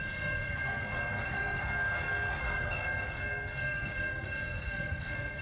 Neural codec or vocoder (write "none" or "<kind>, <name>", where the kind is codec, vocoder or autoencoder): codec, SNAC